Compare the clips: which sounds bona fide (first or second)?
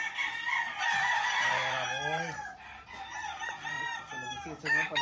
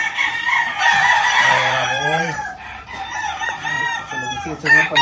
first